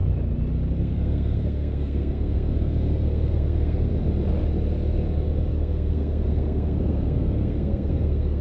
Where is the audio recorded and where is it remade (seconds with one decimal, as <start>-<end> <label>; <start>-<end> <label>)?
0.0-0.8 recorded; 0.8-3.9 remade; 3.9-5.5 recorded; 5.5-8.4 remade